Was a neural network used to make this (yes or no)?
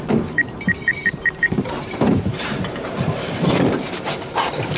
yes